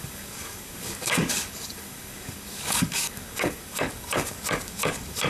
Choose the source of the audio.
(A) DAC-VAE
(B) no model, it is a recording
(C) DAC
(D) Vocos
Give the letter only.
C